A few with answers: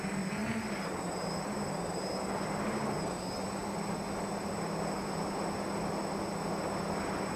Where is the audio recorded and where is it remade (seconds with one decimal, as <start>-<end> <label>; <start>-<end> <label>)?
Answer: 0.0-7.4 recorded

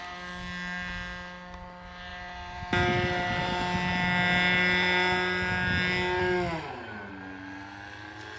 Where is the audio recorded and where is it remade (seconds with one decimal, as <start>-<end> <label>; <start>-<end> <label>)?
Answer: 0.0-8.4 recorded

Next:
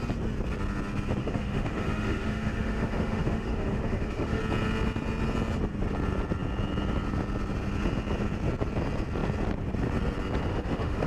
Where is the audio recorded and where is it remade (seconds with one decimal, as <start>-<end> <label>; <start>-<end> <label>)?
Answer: 0.0-1.2 recorded; 1.2-4.4 remade; 4.4-10.5 recorded; 10.5-11.1 remade

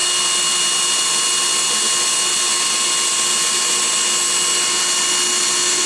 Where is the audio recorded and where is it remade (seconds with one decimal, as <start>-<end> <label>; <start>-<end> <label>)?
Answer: 0.0-5.9 recorded